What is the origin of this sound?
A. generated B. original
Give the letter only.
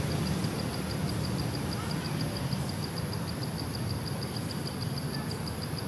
B